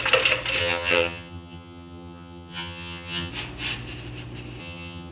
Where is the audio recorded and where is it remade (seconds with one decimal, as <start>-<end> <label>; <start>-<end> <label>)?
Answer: 0.0-0.6 recorded; 0.6-3.3 remade; 3.3-4.6 recorded; 4.6-5.1 remade